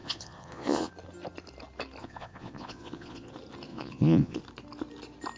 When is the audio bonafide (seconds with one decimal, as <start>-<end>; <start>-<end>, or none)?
0.9-2.0; 3.3-3.7; 4.4-5.4